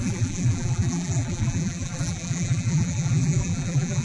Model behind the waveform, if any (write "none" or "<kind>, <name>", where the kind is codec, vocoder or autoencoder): vocoder, BigVGAN v2